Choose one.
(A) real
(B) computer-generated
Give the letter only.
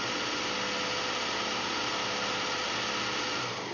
A